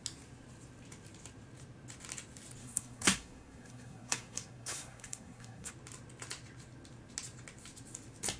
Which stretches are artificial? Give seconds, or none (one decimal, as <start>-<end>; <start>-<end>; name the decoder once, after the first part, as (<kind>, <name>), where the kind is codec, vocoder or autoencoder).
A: 2.6-5.7 (codec, SNAC)